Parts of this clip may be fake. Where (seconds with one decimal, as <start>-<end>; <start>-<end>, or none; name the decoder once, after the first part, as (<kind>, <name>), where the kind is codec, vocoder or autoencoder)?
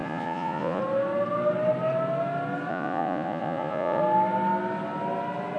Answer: 0.0-0.8 (vocoder, Vocos); 2.7-4.0